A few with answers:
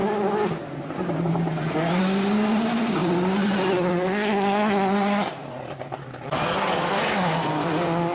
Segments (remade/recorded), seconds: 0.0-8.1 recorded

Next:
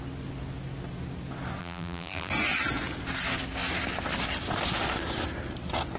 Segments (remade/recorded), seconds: 0.0-1.6 recorded; 1.6-2.3 remade; 2.3-6.0 recorded

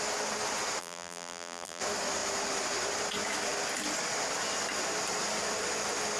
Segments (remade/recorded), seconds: 0.0-0.8 recorded; 0.8-1.8 remade; 1.8-6.2 recorded

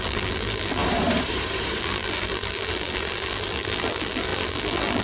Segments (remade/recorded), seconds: 0.0-0.8 remade; 0.8-1.8 recorded; 1.8-5.0 remade

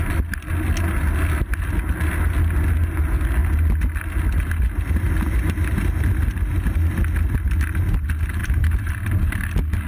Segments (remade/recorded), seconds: 0.0-8.4 recorded; 8.4-8.9 remade; 8.9-9.9 recorded